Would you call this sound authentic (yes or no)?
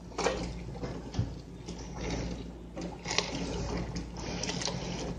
yes